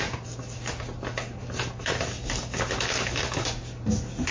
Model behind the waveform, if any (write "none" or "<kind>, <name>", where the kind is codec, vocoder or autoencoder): none